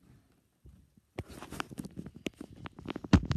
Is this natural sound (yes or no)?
yes